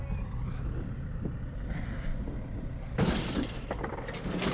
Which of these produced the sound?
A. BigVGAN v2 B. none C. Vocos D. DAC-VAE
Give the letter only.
A